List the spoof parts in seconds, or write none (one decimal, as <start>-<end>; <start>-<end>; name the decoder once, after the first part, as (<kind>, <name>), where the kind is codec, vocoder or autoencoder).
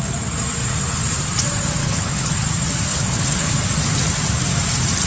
1.8-2.3 (codec, HILCodec); 2.9-3.5